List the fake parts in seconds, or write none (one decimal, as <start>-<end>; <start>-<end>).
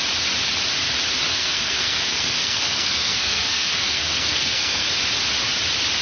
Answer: 1.3-4.9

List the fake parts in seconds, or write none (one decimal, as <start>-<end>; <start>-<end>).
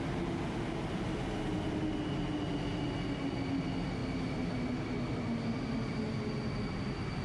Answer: none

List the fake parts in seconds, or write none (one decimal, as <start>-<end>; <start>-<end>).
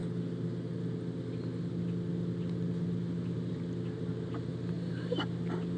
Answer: none